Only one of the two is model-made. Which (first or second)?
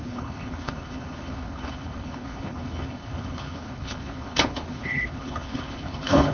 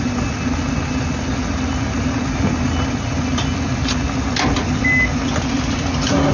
first